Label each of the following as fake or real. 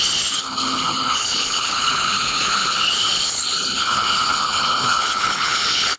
fake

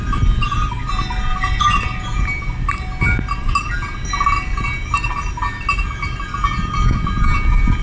real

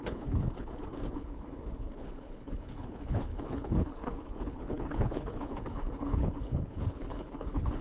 fake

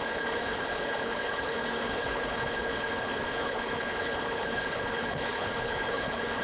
fake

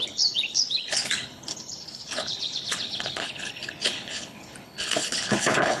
fake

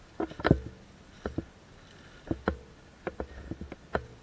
real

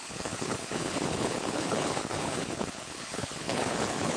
fake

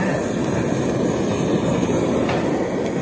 real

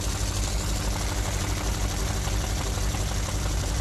real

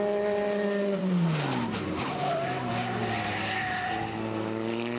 real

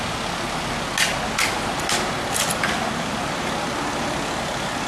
real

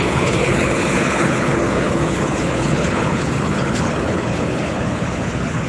fake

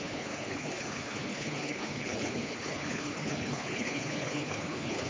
fake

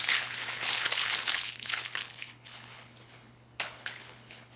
fake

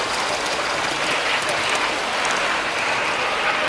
real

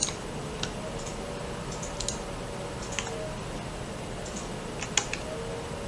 real